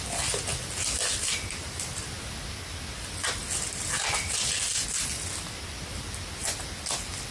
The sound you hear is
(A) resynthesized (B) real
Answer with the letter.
B